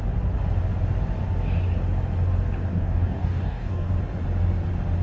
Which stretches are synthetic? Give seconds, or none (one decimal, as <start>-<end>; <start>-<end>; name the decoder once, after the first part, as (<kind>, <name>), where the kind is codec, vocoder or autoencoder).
2.7-3.9 (codec, DAC)